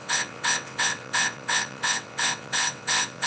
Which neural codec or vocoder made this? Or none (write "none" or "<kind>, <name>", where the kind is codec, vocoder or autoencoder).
vocoder, WaveNeXt